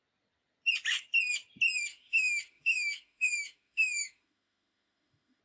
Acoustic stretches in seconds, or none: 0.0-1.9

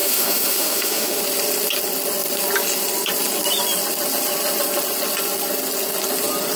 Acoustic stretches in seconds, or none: 1.2-6.6

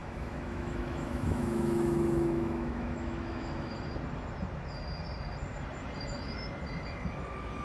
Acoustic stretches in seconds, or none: 3.7-7.6

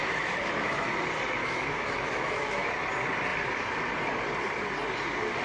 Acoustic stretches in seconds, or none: 0.9-1.4; 2.7-5.4

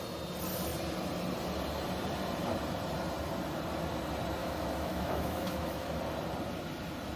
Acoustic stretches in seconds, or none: 0.0-4.4; 6.0-7.2

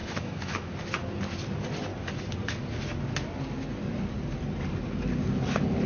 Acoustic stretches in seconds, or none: 0.8-5.9

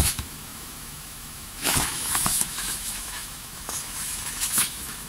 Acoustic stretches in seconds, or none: none